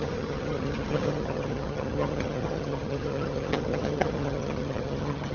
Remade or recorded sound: remade